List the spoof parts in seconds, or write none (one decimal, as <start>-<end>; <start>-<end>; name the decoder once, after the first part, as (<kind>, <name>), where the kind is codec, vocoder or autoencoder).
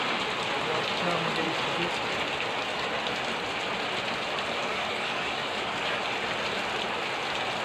4.7-6.0 (codec, DAC)